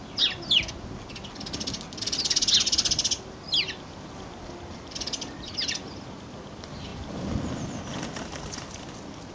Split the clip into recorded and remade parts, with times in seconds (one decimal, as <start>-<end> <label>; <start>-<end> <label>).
0.0-9.3 recorded